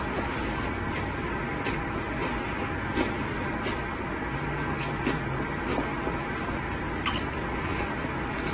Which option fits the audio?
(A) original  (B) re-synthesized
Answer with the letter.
A